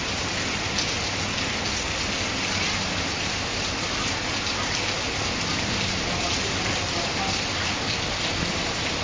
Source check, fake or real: real